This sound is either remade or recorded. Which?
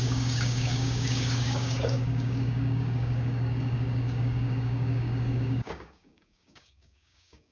remade